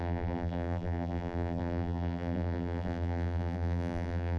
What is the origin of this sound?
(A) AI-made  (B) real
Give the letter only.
A